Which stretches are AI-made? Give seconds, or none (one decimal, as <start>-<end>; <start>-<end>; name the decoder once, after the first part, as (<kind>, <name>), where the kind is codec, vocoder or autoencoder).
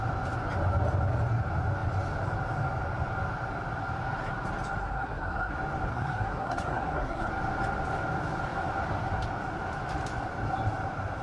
4.8-5.5 (codec, SNAC); 5.9-7.3